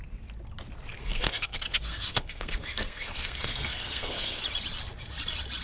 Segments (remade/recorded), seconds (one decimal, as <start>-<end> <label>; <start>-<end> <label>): 0.0-1.0 recorded; 1.0-4.4 remade; 4.4-5.6 recorded